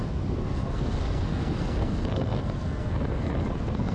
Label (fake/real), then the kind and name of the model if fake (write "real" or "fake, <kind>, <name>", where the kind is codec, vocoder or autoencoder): fake, codec, SNAC